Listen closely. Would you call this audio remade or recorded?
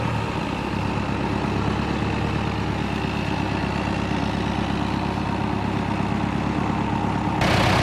recorded